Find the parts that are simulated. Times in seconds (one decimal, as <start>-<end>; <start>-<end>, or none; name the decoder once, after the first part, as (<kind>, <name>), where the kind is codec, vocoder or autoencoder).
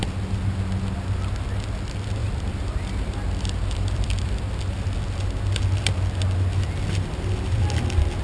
2.2-4.6 (vocoder, BigVGAN v2)